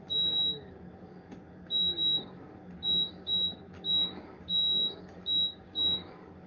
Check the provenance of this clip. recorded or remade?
remade